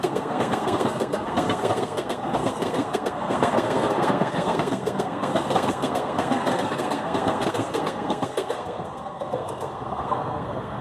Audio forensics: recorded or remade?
remade